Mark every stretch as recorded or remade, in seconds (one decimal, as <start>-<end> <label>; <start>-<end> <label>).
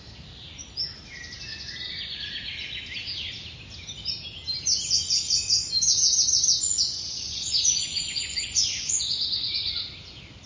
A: 0.0-1.5 recorded; 1.5-2.2 remade; 2.2-5.6 recorded; 5.6-9.7 remade; 9.7-10.5 recorded